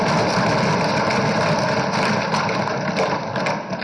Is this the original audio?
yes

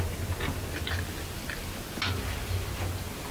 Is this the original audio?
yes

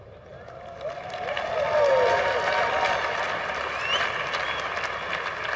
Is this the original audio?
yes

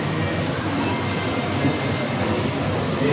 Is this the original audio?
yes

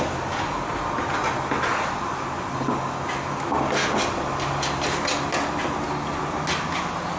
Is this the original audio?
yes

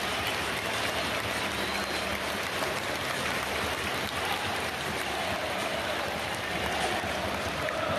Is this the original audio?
yes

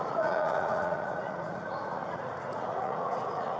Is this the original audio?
no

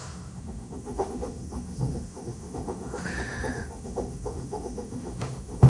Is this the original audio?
no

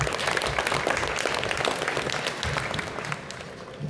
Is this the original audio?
yes